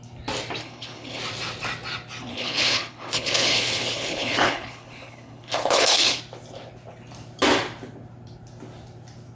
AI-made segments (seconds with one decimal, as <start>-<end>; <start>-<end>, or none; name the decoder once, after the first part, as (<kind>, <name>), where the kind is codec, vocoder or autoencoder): 0.6-1.2 (codec, HILCodec); 2.3-6.2